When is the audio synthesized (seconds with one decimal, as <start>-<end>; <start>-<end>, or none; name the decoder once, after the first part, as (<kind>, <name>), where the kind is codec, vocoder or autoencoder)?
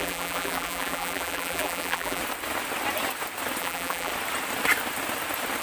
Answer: 0.0-2.2 (vocoder, BigVGAN v2); 3.6-4.1